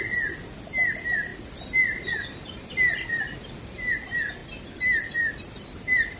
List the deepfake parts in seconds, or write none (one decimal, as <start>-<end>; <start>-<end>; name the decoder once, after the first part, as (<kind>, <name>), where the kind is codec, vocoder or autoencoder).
none